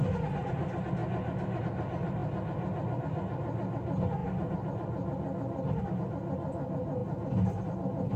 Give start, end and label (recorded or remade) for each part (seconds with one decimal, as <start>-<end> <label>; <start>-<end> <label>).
0.0-8.2 recorded